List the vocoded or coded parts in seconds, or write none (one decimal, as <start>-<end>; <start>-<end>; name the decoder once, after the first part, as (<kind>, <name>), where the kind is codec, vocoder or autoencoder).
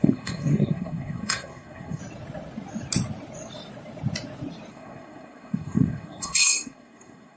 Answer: 0.0-2.0 (codec, SNAC); 4.7-7.4